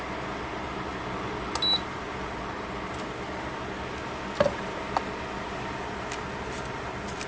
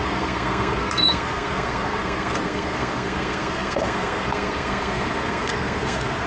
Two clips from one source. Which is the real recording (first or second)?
first